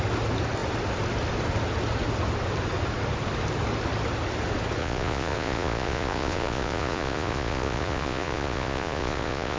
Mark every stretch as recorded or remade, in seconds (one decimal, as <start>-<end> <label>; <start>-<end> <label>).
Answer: 0.0-4.8 recorded; 4.8-9.6 remade